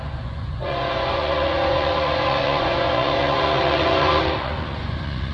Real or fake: fake